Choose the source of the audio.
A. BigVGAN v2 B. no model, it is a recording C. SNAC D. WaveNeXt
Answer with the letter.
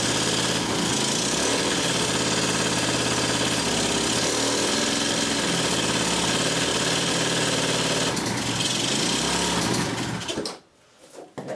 B